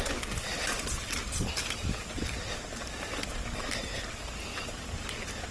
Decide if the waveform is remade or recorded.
recorded